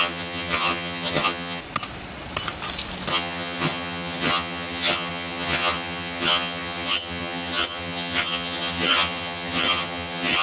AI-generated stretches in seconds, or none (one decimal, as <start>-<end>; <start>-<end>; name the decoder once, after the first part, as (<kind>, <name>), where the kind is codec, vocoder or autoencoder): 0.0-1.6 (vocoder, HiFi-GAN); 3.1-10.4